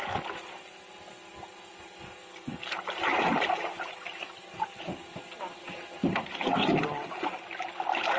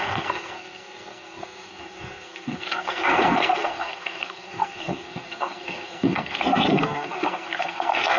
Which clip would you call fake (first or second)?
second